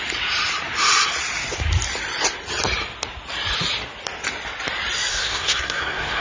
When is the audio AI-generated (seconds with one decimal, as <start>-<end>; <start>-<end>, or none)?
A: 5.1-6.2